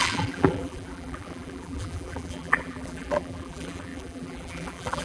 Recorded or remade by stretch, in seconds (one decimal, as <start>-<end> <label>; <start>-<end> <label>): 0.0-5.0 remade